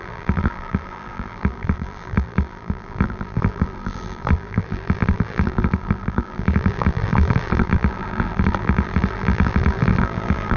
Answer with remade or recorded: remade